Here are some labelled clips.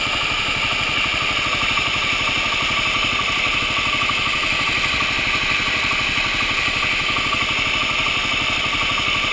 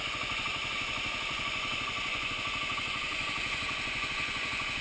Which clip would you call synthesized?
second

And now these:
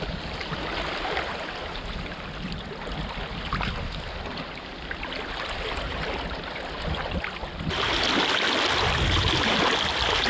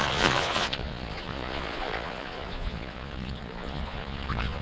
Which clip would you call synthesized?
second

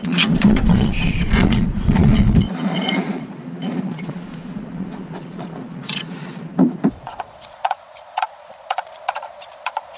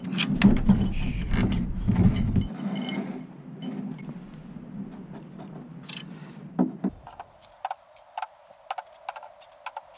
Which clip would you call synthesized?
first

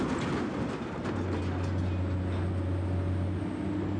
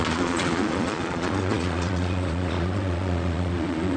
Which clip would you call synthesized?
second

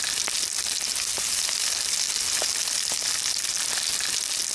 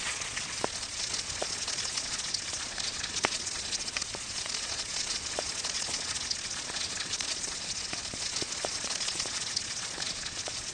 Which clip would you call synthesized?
second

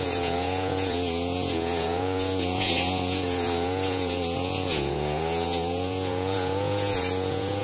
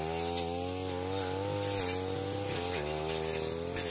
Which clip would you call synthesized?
first